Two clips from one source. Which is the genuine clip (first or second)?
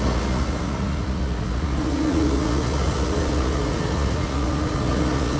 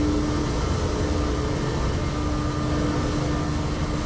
second